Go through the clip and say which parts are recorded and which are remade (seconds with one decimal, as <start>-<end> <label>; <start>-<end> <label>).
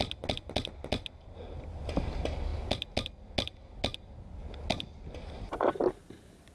0.0-6.5 recorded